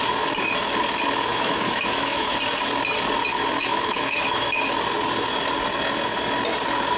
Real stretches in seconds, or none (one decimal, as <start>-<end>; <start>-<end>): 0.0-1.3; 2.4-3.6; 4.6-7.0